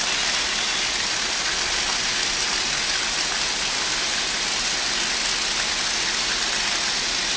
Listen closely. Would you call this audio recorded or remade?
recorded